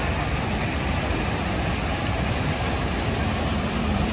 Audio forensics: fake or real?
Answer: real